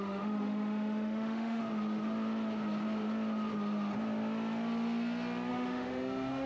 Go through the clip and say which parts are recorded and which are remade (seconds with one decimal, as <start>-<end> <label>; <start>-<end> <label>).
0.0-1.6 remade; 1.6-5.5 recorded; 5.5-6.5 remade